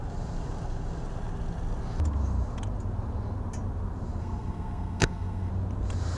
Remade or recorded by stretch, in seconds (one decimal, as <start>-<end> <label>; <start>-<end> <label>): 0.0-4.2 recorded; 4.2-5.5 remade; 5.5-6.2 recorded